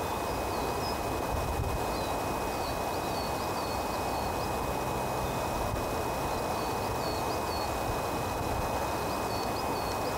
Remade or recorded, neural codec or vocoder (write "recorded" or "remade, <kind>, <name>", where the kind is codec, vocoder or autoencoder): recorded